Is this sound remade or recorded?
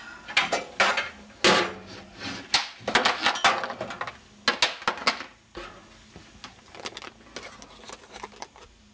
recorded